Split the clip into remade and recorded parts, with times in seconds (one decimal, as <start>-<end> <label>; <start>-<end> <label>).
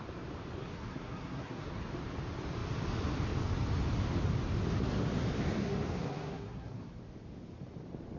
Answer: 0.0-0.6 recorded; 0.6-1.9 remade; 1.9-5.6 recorded; 5.6-7.0 remade; 7.0-8.2 recorded